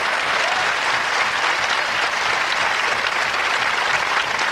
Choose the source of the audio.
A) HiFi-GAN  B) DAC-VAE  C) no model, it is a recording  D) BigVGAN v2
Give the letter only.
D